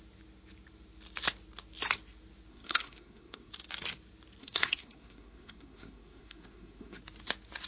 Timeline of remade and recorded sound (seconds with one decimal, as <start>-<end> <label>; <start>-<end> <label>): 0.0-2.5 recorded; 2.5-3.5 remade; 3.5-4.4 recorded; 4.4-7.0 remade; 7.0-7.7 recorded